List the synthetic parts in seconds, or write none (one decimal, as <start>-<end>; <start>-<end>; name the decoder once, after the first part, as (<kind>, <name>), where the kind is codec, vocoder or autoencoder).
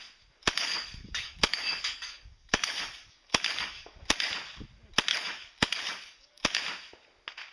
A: 0.4-4.3 (codec, DAC); 5.1-6.6